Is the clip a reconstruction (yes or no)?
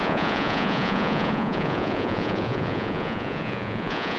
yes